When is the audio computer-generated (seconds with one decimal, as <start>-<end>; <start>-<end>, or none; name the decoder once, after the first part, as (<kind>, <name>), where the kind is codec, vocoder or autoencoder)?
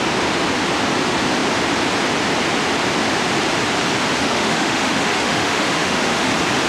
4.2-6.3 (autoencoder, DAC-VAE)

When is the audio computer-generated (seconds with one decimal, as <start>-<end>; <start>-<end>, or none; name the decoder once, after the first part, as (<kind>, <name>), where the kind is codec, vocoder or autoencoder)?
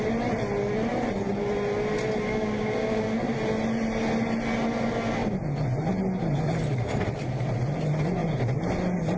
2.3-3.0 (codec, DAC)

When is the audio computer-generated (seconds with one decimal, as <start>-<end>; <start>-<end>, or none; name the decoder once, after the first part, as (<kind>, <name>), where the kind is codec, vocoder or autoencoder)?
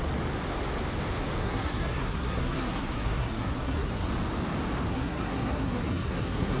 1.4-4.1 (codec, SNAC); 4.9-6.6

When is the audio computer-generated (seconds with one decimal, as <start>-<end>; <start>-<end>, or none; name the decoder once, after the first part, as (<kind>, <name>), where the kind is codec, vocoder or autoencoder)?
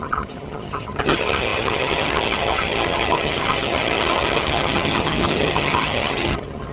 0.0-6.7 (vocoder, HiFi-GAN)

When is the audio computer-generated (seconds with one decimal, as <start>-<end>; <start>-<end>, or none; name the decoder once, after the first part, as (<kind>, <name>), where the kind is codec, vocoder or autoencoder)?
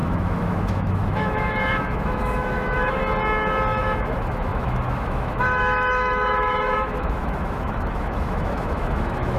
0.0-3.0 (autoencoder, DAC-VAE); 3.8-9.4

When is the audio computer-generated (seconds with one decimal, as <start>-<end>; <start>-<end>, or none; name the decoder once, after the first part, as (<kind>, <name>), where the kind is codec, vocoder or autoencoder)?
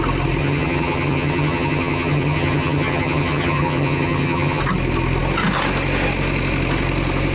0.4-4.6 (vocoder, HiFi-GAN)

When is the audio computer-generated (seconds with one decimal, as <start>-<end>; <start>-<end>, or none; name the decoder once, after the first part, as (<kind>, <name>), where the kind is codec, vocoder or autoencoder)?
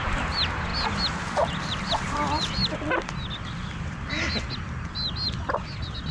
0.0-2.6 (vocoder, BigVGAN v2); 3.3-6.1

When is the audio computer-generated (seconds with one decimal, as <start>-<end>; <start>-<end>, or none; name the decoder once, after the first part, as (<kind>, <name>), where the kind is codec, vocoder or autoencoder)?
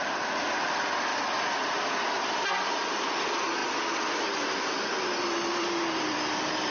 3.6-6.7 (vocoder, BigVGAN v2)